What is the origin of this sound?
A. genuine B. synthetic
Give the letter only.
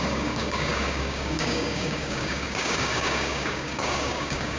B